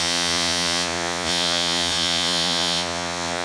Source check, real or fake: fake